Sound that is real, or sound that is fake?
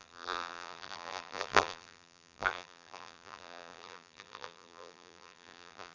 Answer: fake